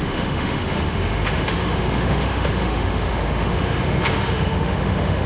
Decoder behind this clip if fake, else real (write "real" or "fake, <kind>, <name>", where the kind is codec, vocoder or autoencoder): fake, autoencoder, DAC-VAE